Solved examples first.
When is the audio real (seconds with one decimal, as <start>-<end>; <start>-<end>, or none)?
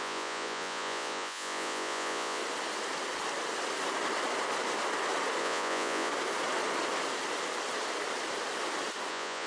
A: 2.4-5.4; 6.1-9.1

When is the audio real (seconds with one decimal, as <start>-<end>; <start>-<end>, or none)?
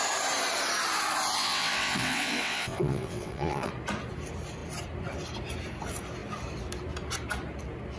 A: 0.0-1.4; 3.7-8.0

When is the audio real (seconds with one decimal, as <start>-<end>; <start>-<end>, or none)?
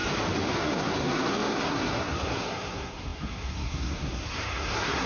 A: 0.0-0.5